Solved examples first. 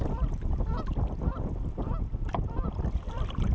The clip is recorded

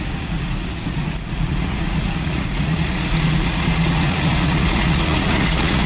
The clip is remade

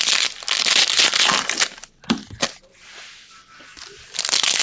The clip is recorded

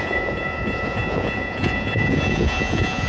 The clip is remade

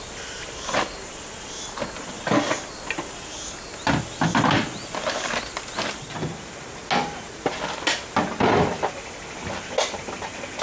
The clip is recorded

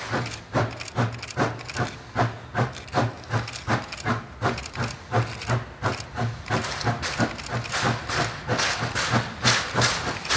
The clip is recorded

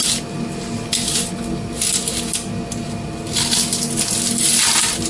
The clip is recorded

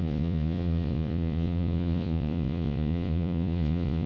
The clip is remade